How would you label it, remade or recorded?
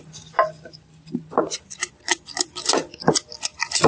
remade